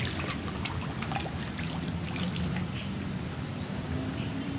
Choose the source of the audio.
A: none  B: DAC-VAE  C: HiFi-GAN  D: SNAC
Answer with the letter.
A